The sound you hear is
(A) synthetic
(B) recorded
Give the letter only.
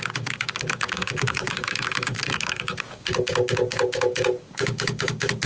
A